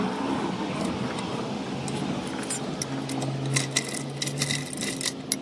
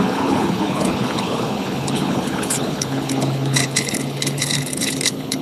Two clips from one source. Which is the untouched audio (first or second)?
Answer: first